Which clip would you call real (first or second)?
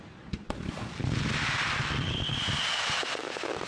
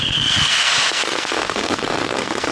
first